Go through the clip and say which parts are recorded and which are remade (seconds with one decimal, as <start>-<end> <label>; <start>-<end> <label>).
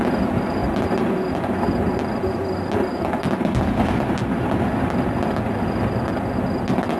0.0-7.0 recorded